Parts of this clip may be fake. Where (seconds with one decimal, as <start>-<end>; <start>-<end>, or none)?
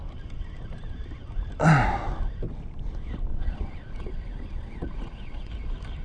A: 3.3-5.5